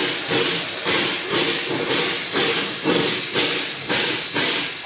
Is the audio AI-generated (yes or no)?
no